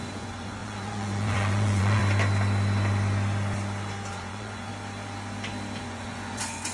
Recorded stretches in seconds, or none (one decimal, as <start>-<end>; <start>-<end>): 2.0-4.1; 4.7-5.8